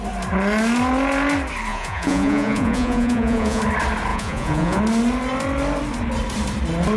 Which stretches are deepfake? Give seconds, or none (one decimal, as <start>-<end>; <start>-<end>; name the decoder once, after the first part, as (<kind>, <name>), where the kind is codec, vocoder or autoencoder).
1.7-3.6 (vocoder, Vocos); 4.1-4.8